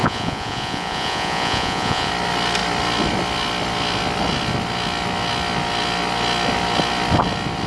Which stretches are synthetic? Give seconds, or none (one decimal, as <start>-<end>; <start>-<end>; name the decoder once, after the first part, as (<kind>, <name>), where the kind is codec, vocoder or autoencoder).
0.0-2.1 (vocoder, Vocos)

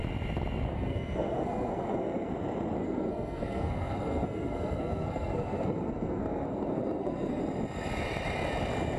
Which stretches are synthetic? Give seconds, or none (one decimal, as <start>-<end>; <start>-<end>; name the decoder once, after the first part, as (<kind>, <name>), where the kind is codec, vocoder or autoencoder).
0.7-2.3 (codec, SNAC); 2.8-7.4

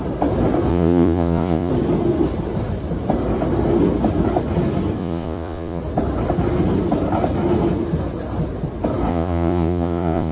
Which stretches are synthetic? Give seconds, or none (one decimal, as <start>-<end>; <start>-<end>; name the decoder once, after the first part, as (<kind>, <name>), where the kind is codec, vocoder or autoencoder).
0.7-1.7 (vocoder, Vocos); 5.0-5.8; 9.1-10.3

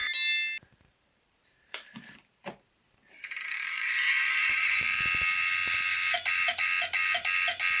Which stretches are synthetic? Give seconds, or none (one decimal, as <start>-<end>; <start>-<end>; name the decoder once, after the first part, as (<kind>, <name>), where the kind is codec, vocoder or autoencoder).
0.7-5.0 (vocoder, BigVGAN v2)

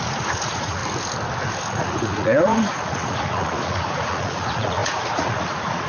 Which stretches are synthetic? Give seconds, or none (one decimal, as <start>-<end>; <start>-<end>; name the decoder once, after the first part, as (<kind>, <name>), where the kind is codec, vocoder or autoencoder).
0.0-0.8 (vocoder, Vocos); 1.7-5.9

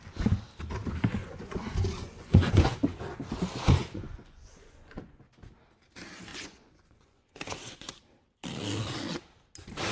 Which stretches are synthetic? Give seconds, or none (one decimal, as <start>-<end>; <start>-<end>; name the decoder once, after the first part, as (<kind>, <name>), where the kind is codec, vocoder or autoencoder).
1.2-3.0 (vocoder, Vocos); 3.8-5.2; 6.3-8.0